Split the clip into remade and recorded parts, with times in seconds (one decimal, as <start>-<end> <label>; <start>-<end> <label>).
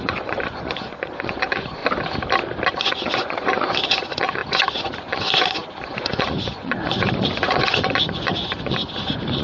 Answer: 0.0-1.8 remade; 1.8-2.7 recorded; 2.7-9.4 remade